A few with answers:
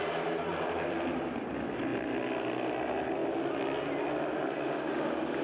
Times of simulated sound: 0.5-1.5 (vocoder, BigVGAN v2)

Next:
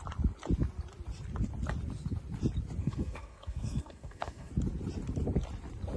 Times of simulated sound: 2.8-4.5 (codec, SNAC)

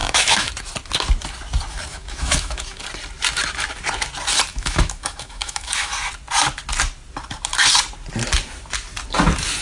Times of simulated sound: 0.0-0.5 (autoencoder, DAC-VAE); 1.9-2.8; 4.5-5.9

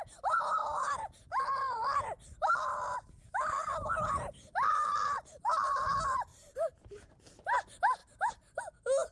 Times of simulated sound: 0.6-1.2 (vocoder, BigVGAN v2); 6.3-7.2; 8.0-8.6

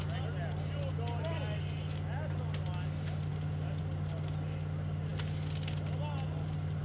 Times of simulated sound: none

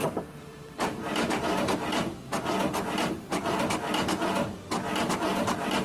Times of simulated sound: 0.0-2.0 (vocoder, BigVGAN v2); 2.7-3.3; 5.1-5.8

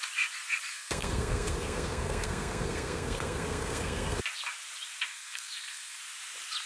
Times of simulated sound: 0.7-4.2 (codec, SNAC); 5.1-6.0